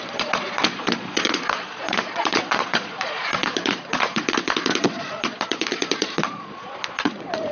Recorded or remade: remade